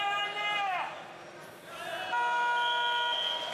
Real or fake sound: real